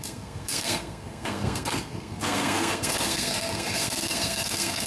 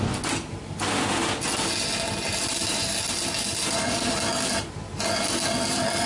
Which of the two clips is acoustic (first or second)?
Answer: second